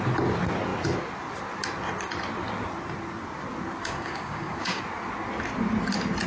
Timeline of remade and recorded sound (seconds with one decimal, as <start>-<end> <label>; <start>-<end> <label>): 0.0-3.8 recorded; 3.8-4.8 remade; 4.8-6.3 recorded